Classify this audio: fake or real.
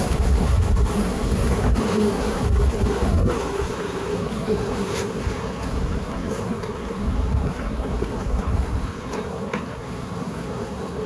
fake